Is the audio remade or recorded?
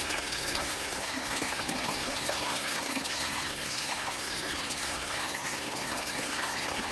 remade